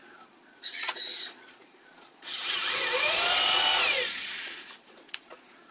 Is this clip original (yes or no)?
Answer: no